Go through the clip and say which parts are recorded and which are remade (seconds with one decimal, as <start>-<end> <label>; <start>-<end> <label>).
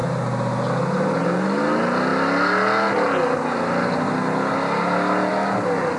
0.0-6.0 recorded